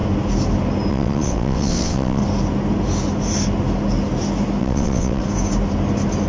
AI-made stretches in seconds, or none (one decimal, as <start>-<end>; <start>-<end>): 0.9-2.2; 4.6-5.2

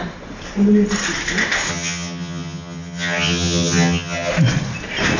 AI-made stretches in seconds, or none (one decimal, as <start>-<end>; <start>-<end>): 1.7-4.3

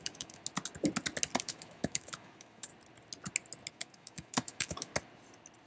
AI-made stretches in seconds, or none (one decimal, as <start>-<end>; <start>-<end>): 0.0-0.4; 1.4-2.7; 3.7-4.9